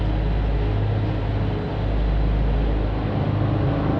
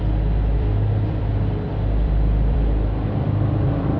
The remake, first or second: second